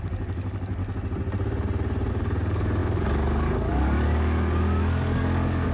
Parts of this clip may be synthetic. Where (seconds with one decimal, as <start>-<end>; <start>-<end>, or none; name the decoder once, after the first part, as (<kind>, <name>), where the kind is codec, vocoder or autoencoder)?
0.0-0.8 (codec, DAC); 2.1-5.7